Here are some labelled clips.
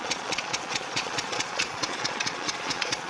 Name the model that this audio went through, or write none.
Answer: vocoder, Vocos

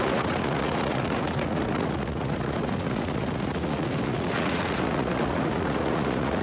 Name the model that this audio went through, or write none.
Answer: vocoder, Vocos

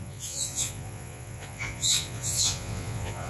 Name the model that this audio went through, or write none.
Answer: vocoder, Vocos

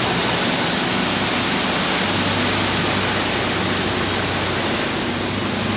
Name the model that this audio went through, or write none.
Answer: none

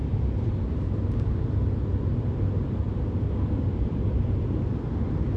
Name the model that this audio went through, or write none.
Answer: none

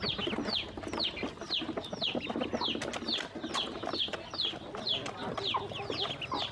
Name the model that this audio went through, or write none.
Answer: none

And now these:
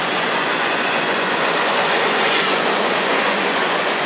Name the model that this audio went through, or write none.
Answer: vocoder, Vocos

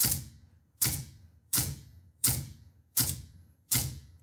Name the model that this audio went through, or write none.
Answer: vocoder, Vocos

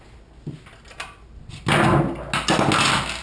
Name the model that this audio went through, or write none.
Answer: none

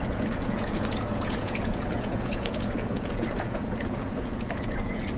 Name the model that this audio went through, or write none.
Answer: vocoder, Vocos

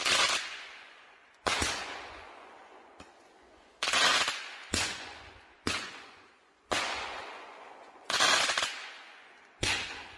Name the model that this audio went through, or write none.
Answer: vocoder, Vocos